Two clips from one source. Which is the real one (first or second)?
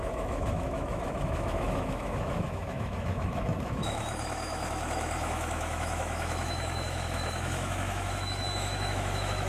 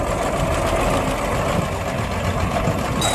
second